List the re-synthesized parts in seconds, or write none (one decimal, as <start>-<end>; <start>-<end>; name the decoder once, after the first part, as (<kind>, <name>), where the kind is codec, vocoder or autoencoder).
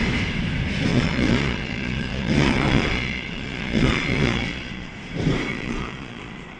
0.9-4.9 (vocoder, Vocos); 5.5-6.6